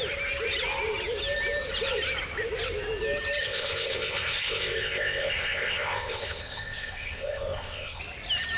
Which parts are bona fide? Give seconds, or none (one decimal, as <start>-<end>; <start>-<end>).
0.0-3.4; 8.0-8.6